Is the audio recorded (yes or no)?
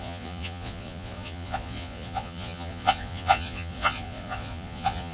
no